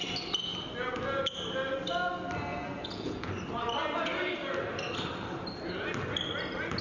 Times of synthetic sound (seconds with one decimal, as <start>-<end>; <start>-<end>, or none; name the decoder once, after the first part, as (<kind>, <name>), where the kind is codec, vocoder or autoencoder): 2.5-3.3 (vocoder, Vocos)